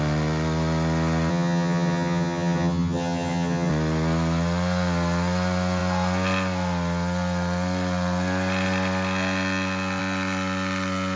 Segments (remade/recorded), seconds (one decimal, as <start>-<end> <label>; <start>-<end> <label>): 0.0-1.3 recorded; 1.3-3.7 remade; 3.7-11.2 recorded